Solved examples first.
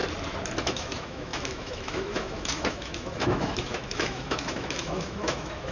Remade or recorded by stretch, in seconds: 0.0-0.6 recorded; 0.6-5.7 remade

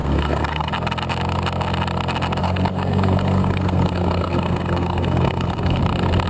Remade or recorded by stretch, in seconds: 0.0-0.7 remade; 0.7-2.4 recorded; 2.4-5.8 remade; 5.8-6.3 recorded

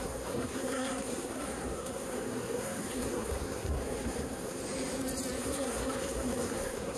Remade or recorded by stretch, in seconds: 0.0-4.6 remade; 4.6-5.4 recorded; 5.4-7.0 remade

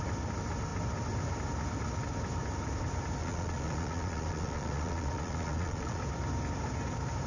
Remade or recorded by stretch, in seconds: 0.0-3.2 recorded; 3.2-6.0 remade; 6.0-7.3 recorded

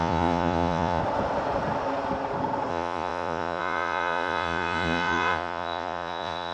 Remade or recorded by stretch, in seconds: 0.0-1.0 remade; 1.0-2.7 recorded; 2.7-6.5 remade

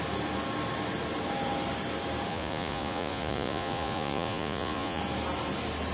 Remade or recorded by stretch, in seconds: 0.0-2.3 recorded; 2.3-5.0 remade; 5.0-5.9 recorded

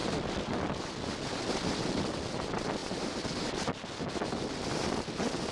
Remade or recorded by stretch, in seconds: 0.0-5.5 recorded